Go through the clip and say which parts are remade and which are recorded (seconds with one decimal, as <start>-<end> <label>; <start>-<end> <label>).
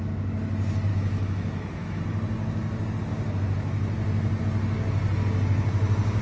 0.0-0.9 recorded; 0.9-2.0 remade; 2.0-6.2 recorded